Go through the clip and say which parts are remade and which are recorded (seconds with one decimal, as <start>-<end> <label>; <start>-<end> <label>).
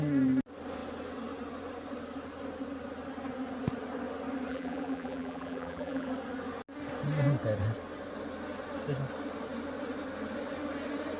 0.0-4.5 recorded; 4.5-6.1 remade; 6.1-11.2 recorded